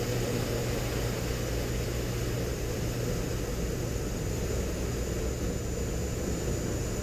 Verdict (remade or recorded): recorded